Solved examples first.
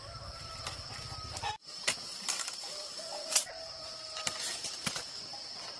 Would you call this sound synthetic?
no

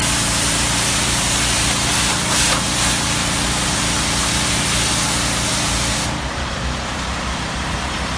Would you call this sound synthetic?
yes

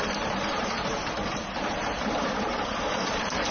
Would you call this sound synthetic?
yes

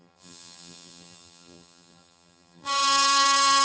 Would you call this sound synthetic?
yes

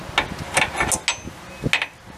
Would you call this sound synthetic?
no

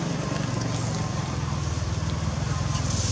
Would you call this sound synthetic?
yes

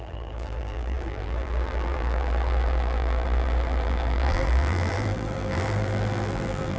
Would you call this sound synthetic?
yes